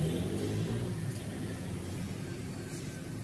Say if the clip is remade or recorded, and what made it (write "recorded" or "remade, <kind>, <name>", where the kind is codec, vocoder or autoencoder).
recorded